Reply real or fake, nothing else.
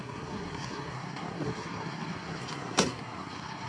fake